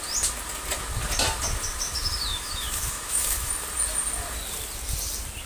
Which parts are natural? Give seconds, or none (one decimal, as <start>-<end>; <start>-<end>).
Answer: 0.0-2.3; 3.5-5.5